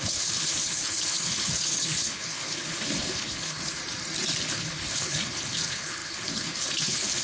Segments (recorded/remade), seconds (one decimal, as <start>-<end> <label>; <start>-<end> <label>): 0.0-3.8 remade; 3.8-4.5 recorded; 4.5-7.2 remade

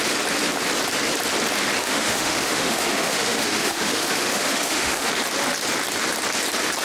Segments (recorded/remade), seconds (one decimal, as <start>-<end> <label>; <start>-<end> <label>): 0.0-1.8 recorded; 1.8-5.1 remade; 5.1-6.8 recorded

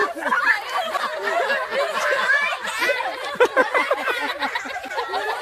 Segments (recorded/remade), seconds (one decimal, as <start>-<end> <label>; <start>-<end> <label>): 0.0-5.4 remade

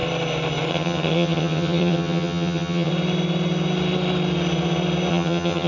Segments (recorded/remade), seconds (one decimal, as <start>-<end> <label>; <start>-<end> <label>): 0.0-0.7 recorded; 0.7-2.9 remade; 2.9-5.1 recorded; 5.1-5.7 remade